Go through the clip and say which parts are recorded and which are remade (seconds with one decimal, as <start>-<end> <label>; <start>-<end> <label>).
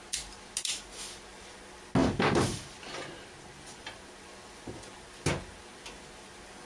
0.0-6.7 recorded